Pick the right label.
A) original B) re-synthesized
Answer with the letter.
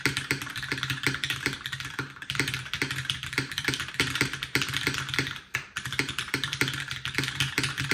B